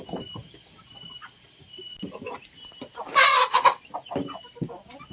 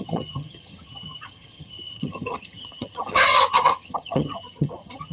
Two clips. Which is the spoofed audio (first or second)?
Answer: second